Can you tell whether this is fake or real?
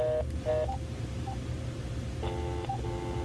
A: real